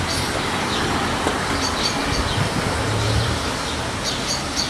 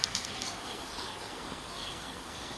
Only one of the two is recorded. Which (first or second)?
first